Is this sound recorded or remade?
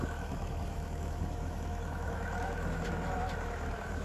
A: remade